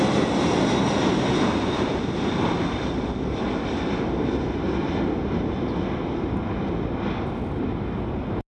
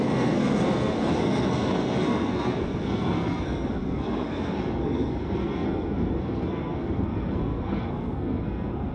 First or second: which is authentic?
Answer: first